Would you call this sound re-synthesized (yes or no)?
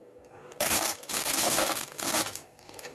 yes